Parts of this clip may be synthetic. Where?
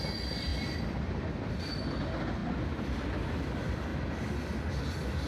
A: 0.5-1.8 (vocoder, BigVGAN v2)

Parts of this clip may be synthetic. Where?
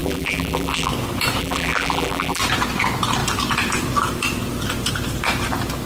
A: 0.0-0.9 (vocoder, BigVGAN v2); 1.4-2.4